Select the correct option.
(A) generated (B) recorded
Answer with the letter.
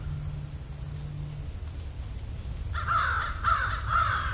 B